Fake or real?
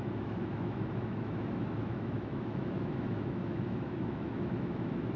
fake